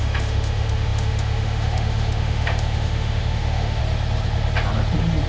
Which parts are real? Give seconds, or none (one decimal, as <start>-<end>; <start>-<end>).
3.8-5.3